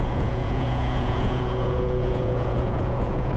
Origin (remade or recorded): remade